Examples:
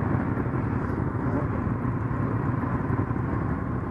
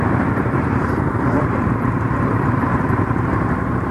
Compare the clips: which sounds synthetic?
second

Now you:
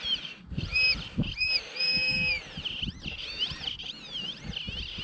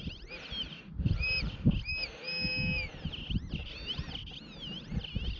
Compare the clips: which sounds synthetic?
first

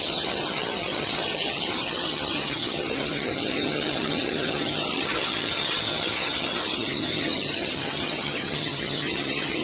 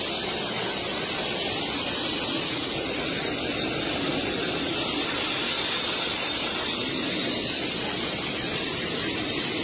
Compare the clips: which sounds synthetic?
first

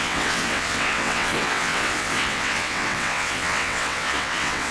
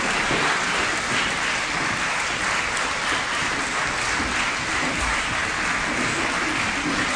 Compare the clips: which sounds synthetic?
first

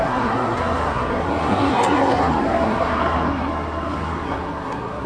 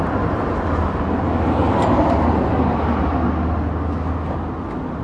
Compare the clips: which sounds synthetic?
first